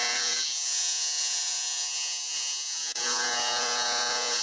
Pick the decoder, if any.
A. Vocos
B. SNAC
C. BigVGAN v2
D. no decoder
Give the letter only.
A